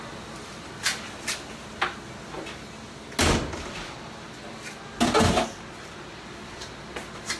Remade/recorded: recorded